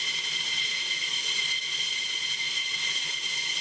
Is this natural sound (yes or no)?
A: yes